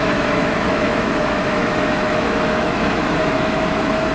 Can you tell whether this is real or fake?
fake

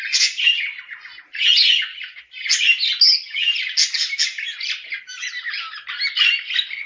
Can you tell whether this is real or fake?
real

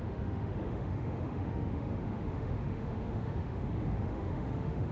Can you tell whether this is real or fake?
fake